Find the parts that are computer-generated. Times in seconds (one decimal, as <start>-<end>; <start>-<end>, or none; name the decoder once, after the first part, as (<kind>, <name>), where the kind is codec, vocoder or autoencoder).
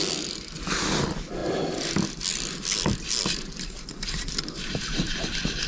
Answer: none